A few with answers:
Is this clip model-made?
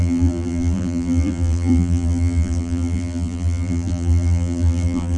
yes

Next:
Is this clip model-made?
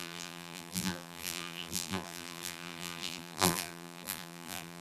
yes